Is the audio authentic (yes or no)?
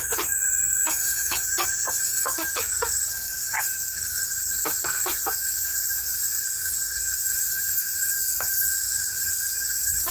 no